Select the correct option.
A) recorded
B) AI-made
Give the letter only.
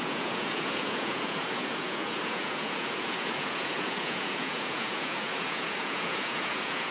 B